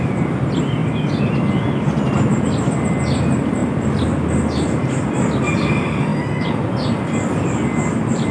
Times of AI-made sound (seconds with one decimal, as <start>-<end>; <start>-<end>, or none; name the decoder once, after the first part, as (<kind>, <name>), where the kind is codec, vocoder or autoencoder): none